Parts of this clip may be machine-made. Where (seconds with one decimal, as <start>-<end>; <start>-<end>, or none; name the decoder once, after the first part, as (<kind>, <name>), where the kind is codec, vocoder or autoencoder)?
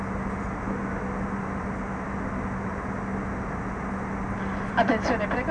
none